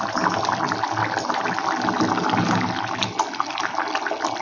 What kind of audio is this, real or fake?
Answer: real